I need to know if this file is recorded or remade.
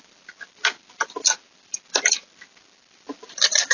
recorded